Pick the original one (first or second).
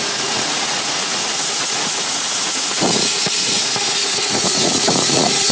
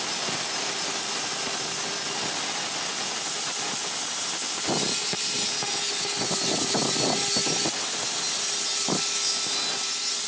second